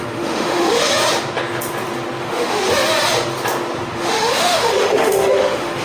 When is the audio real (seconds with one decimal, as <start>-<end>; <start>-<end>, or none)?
0.9-2.2; 2.6-3.9